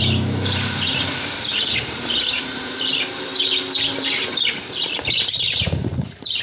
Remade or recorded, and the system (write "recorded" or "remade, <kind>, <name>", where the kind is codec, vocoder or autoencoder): remade, vocoder, BigVGAN v2